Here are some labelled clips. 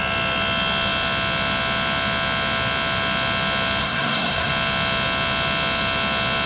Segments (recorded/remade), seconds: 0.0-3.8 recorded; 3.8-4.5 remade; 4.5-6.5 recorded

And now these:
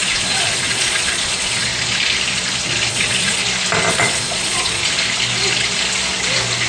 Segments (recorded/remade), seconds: 0.0-1.7 remade; 1.7-2.9 recorded; 2.9-3.4 remade; 3.4-3.9 recorded; 3.9-4.8 remade; 4.8-6.7 recorded

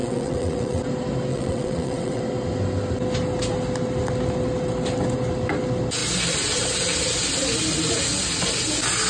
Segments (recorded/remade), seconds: 0.0-0.8 remade; 0.8-1.3 recorded; 1.3-2.2 remade; 2.2-9.1 recorded

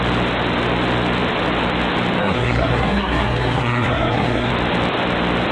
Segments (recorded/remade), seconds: 0.0-2.2 recorded; 2.2-4.5 remade; 4.5-5.5 recorded

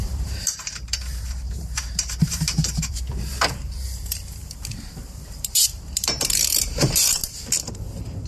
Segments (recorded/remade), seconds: 0.0-7.2 remade; 7.2-7.7 recorded; 7.7-8.3 remade

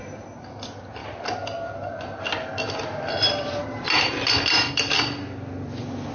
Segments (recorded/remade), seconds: 0.0-6.1 recorded

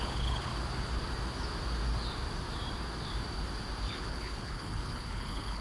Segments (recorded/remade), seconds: 0.0-0.5 remade; 0.5-3.9 recorded; 3.9-5.6 remade